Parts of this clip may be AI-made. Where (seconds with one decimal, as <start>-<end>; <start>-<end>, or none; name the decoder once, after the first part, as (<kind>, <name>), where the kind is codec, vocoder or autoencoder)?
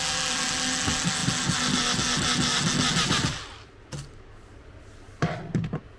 none